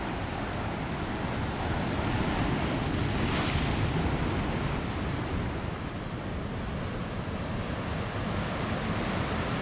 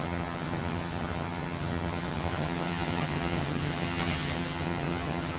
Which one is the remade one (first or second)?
second